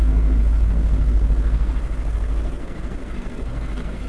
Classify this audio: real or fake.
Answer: fake